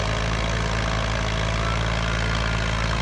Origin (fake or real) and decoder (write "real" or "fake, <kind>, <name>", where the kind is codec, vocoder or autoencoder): real